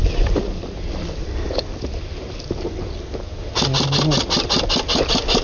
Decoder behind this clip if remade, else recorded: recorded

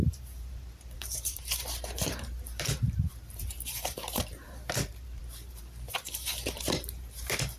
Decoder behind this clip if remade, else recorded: remade, vocoder, BigVGAN v2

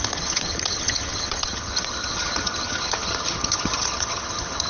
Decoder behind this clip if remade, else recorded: remade, vocoder, HiFi-GAN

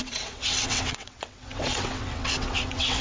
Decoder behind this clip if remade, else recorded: remade, vocoder, WaveNeXt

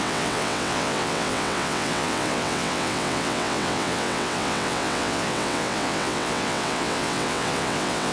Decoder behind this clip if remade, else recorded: remade, vocoder, WaveNeXt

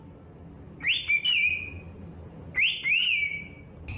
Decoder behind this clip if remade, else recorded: recorded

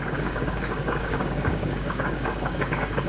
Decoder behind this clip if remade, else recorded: remade, codec, DAC